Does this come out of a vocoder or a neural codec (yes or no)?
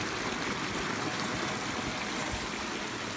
no